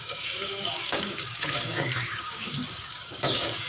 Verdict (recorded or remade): remade